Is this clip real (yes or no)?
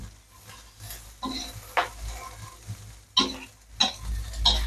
yes